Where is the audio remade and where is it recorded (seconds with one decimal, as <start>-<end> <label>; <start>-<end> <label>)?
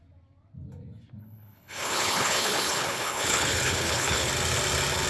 0.0-1.2 recorded; 1.2-4.3 remade; 4.3-5.1 recorded